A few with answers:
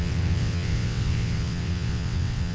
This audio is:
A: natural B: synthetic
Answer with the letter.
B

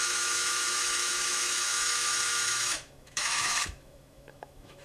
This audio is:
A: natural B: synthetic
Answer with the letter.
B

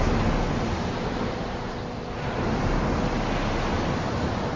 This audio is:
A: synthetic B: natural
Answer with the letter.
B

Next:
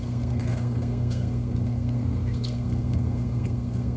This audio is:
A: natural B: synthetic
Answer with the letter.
B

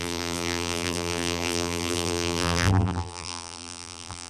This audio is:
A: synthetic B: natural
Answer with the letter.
A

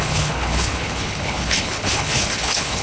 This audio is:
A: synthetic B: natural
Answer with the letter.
A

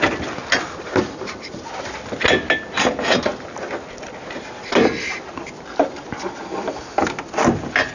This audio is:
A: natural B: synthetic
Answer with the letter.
A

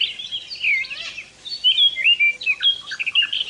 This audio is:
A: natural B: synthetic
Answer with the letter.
A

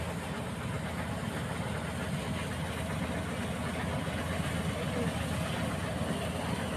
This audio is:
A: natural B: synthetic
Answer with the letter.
A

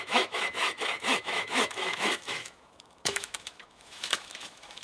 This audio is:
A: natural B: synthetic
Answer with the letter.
B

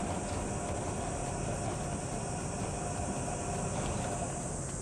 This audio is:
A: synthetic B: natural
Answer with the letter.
B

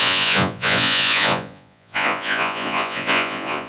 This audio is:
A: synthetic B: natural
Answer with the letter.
A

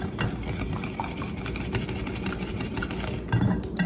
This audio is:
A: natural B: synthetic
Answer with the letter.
A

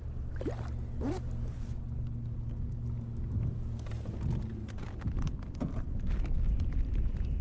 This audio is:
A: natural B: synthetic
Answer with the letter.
A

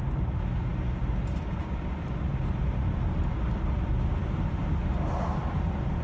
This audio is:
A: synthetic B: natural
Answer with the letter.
B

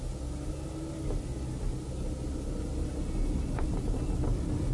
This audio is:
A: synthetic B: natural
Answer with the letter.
B